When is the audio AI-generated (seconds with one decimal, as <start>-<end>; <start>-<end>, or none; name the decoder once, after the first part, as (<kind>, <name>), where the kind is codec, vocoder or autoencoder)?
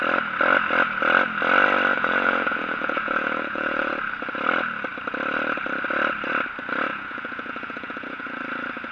1.9-3.9 (vocoder, Vocos); 6.9-8.4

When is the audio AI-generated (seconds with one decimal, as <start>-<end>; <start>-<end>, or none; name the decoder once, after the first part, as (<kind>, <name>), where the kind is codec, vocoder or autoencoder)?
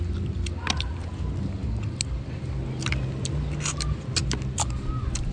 none